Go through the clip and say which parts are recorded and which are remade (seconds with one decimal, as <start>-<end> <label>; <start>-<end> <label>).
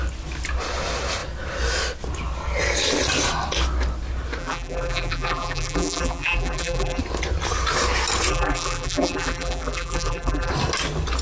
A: 0.0-4.4 recorded; 4.4-7.0 remade; 7.0-8.3 recorded; 8.3-10.5 remade; 10.5-11.2 recorded